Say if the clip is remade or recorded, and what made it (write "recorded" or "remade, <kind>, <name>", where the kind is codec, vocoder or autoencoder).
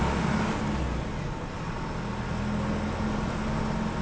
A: recorded